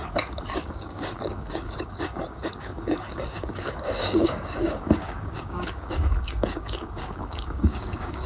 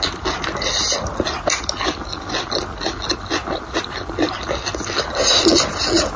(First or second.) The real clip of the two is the second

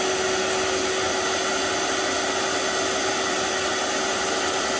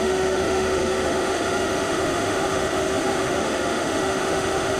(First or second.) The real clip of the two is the first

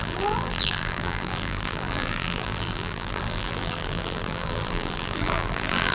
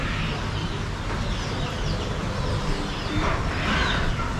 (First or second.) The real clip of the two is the second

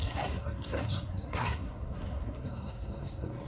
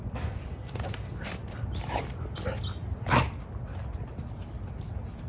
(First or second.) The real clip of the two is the second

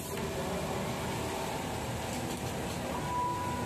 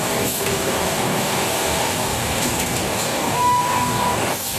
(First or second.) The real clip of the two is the first